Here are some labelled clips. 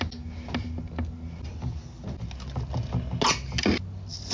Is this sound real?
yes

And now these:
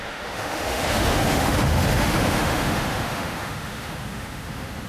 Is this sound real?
no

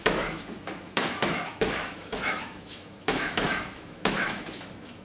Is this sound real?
no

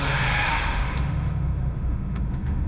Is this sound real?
no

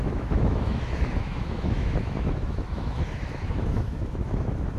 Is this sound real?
no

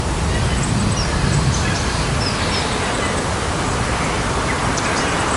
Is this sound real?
yes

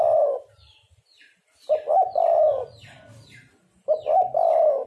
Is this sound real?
yes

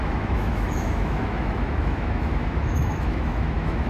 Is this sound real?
no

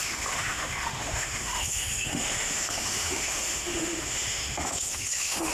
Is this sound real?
no